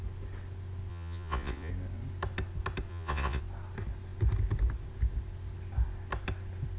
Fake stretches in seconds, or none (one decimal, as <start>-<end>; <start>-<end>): 0.9-1.7; 2.9-3.4